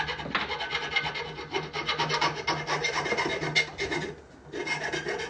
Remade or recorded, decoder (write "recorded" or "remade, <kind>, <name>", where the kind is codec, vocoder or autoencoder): recorded